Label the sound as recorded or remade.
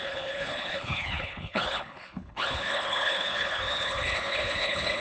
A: remade